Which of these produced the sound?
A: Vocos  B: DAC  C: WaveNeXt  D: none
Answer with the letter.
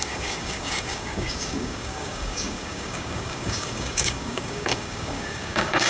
B